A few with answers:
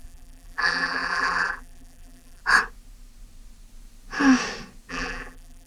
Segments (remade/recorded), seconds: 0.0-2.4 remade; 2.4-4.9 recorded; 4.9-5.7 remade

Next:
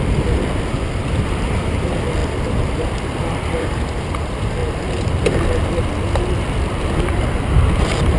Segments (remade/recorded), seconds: 0.0-4.6 remade; 4.6-6.2 recorded; 6.2-8.2 remade

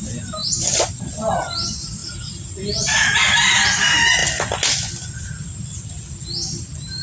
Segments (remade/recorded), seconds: 0.0-0.4 recorded; 0.4-1.0 remade; 1.0-7.0 recorded

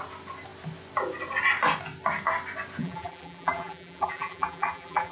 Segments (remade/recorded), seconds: 0.0-2.8 recorded; 2.8-5.1 remade

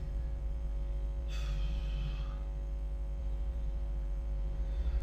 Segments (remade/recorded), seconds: 0.0-0.7 remade; 0.7-1.2 recorded; 1.2-1.8 remade; 1.8-3.2 recorded; 3.2-5.0 remade